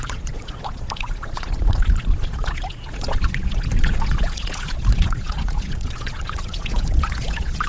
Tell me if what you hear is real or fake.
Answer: fake